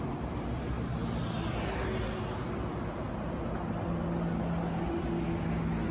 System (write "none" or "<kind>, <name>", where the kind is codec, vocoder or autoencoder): none